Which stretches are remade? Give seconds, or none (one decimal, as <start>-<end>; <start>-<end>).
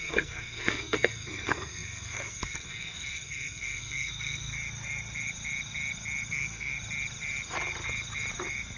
0.0-4.5; 6.3-6.7